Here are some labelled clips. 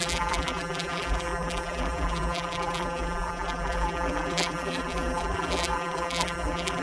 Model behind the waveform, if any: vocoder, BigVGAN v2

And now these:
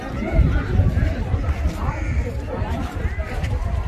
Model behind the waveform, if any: none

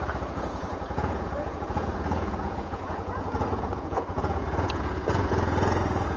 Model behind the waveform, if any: vocoder, Vocos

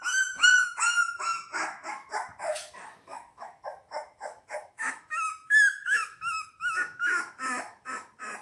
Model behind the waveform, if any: autoencoder, DAC-VAE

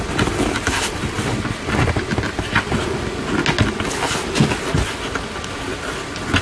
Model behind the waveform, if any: none